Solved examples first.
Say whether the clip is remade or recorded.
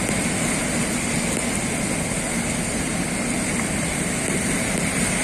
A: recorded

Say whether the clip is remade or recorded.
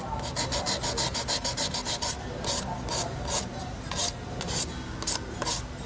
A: recorded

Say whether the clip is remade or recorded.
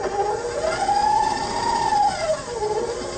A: remade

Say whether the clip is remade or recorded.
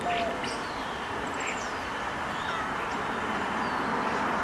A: recorded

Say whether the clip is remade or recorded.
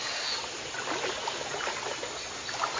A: recorded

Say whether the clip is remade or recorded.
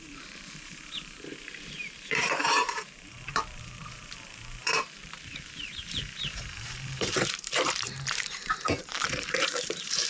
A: remade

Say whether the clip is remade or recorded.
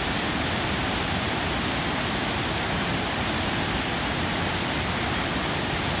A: recorded